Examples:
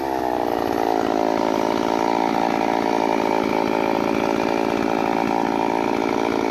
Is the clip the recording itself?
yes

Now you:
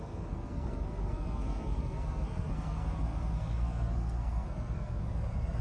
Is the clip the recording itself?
no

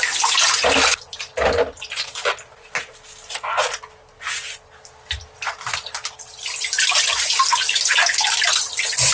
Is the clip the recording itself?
yes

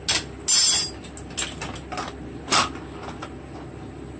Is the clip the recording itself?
yes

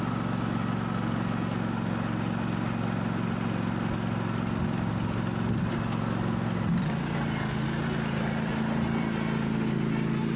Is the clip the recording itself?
yes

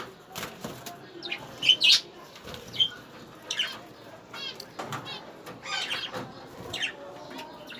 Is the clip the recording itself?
yes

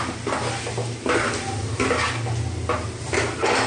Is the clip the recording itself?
yes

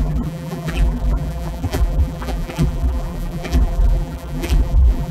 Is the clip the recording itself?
no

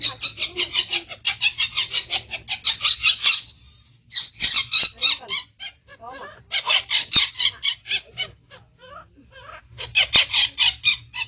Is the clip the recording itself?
yes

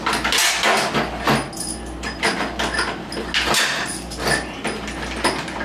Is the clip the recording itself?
yes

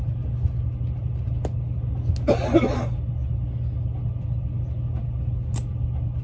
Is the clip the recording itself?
yes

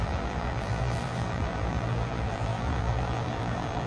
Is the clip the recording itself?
no